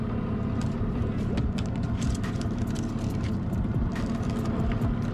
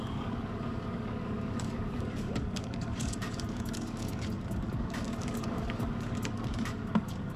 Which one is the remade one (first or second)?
second